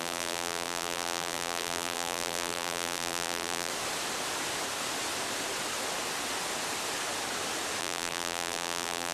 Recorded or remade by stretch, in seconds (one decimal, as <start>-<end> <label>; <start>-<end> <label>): 0.0-3.7 remade; 3.7-7.8 recorded; 7.8-9.1 remade